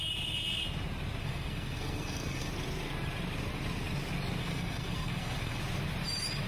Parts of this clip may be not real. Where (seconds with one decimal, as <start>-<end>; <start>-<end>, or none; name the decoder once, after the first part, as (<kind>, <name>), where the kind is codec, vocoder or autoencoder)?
1.2-2.5 (codec, SNAC); 4.4-5.6